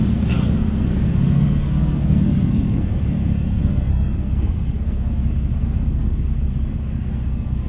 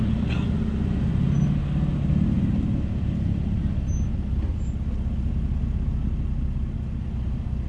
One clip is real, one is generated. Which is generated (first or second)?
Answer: first